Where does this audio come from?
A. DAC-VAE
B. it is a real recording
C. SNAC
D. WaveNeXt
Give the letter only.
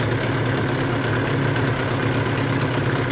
B